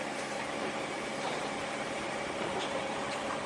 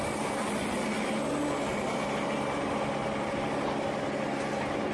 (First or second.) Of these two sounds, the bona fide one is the second